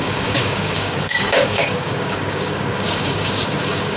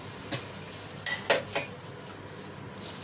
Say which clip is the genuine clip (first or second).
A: second